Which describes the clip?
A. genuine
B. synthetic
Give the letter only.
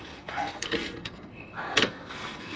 B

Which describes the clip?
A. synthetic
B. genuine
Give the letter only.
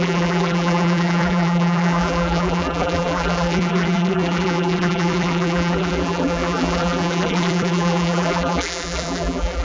A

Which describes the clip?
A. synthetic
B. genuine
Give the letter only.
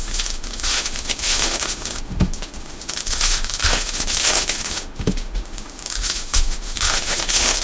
A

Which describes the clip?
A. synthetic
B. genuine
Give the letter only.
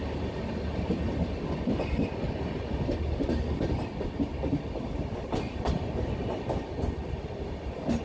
B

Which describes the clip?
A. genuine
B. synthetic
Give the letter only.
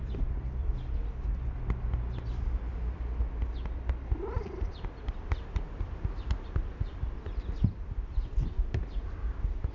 A